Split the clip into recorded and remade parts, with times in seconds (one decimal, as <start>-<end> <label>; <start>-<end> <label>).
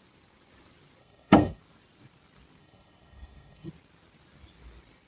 0.0-1.0 recorded; 1.0-1.6 remade; 1.6-2.6 recorded; 2.6-3.7 remade; 3.7-5.1 recorded